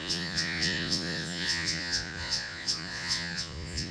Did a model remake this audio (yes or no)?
yes